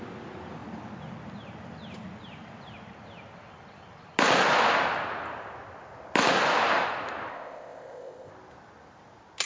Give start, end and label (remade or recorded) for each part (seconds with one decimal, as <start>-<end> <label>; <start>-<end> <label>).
0.0-7.3 recorded; 7.3-8.3 remade; 8.3-9.5 recorded